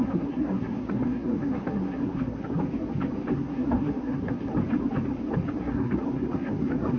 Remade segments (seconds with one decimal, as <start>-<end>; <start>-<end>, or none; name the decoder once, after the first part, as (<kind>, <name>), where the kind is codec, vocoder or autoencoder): 0.0-2.6 (codec, SNAC); 3.3-4.5; 5.6-7.0